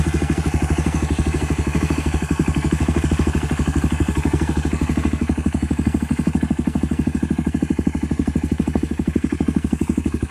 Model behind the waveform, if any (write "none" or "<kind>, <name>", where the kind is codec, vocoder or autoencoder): codec, SNAC